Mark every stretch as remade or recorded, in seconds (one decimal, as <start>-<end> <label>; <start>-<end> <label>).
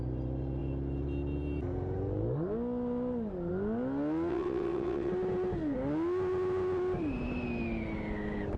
0.0-4.3 recorded; 4.3-5.1 remade; 5.1-8.6 recorded